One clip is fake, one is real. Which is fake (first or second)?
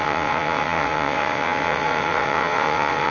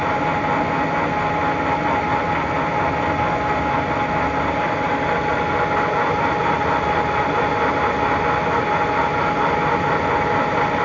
first